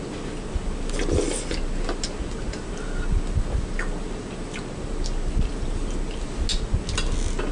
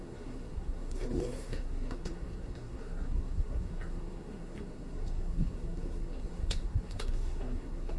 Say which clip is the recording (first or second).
first